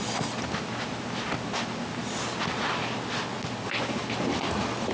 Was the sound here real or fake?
real